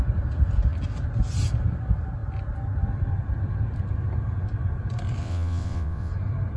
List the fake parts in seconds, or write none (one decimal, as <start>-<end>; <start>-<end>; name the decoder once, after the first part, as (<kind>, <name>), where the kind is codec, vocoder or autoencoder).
5.2-6.1 (vocoder, WaveNeXt)